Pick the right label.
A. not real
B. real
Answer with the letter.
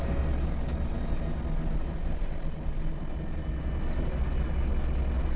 B